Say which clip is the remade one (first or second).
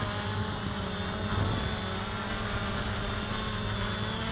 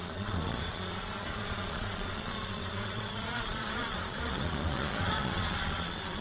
second